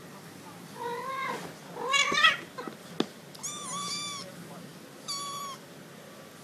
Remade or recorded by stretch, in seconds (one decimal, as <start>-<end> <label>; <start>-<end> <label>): 0.0-6.4 recorded